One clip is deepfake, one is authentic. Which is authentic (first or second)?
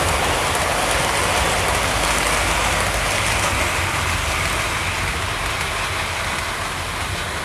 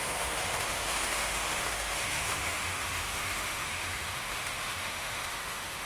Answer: first